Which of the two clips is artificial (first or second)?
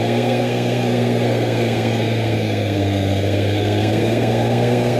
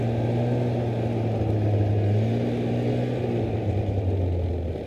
first